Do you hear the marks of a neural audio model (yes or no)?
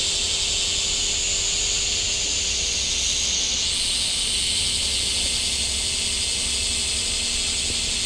no